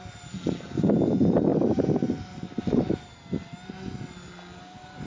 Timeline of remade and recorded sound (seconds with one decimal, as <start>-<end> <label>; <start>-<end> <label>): 0.0-5.1 recorded